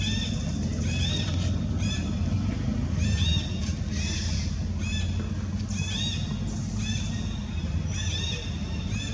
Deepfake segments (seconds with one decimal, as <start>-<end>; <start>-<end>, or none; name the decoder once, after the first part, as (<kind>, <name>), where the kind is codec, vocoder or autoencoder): 0.7-1.9 (vocoder, BigVGAN v2)